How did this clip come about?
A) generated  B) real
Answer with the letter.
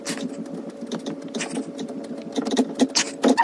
B